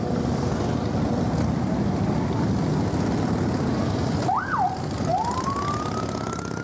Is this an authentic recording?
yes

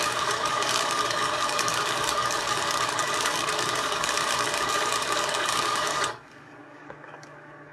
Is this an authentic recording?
no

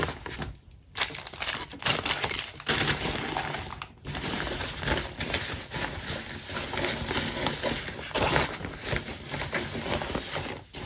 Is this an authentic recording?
yes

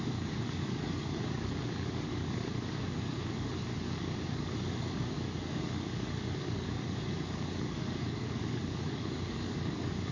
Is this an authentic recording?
no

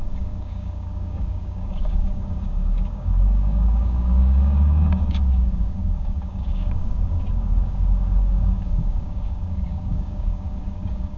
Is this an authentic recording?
no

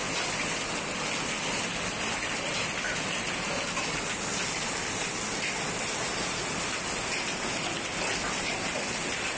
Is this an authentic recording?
yes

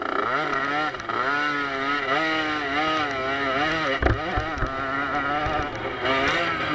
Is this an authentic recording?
yes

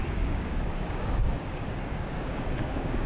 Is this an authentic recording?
no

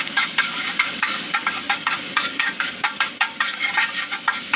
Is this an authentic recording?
no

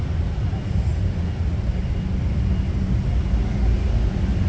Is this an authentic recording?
yes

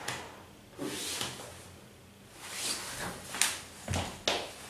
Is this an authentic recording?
yes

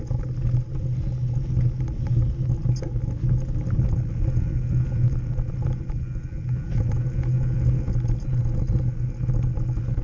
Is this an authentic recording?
yes